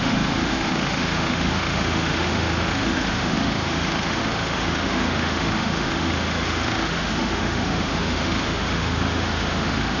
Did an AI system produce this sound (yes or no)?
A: yes